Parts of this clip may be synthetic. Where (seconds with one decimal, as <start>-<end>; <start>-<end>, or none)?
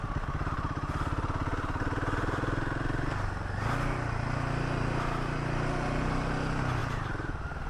6.8-7.7